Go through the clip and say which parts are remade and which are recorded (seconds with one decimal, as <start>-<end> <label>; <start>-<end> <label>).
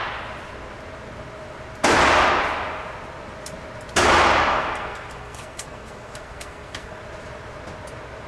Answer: 0.0-4.5 recorded; 4.5-7.0 remade; 7.0-8.3 recorded